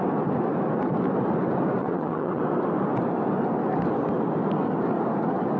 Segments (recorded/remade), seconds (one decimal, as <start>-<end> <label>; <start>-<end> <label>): 0.0-1.8 recorded; 1.8-2.4 remade; 2.4-5.6 recorded